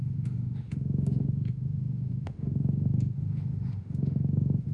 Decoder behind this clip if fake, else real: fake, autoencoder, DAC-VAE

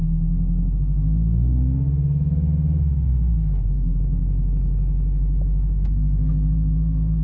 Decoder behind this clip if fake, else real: fake, autoencoder, DAC-VAE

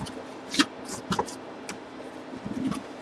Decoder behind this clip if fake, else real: real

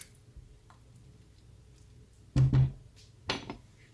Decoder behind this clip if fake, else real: real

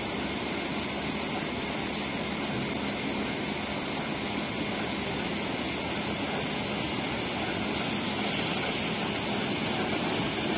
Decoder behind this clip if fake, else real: real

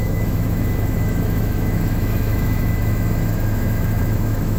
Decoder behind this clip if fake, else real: fake, autoencoder, DAC-VAE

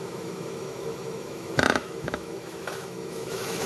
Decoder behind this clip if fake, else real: fake, autoencoder, DAC-VAE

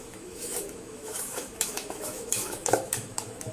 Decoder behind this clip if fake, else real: fake, autoencoder, DAC-VAE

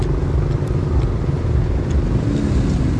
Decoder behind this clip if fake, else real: real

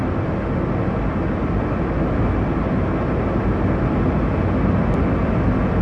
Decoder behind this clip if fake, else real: real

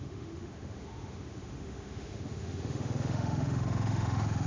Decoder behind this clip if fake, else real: fake, autoencoder, DAC-VAE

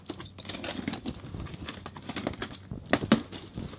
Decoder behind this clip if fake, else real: real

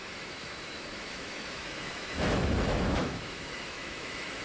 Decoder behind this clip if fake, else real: fake, autoencoder, DAC-VAE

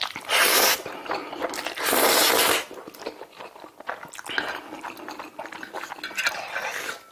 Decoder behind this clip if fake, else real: real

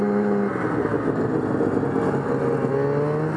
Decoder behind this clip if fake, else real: real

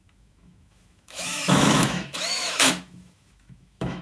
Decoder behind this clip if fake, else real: fake, autoencoder, DAC-VAE